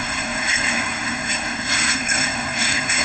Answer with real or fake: fake